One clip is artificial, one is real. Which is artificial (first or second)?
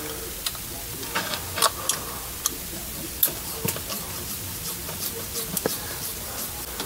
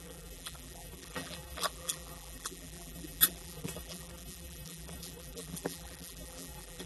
second